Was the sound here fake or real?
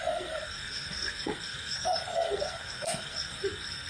fake